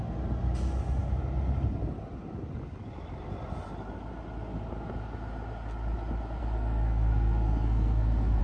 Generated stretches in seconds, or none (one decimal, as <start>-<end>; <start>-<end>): 6.4-8.4